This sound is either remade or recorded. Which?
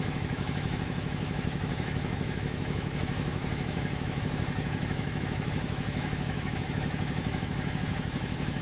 remade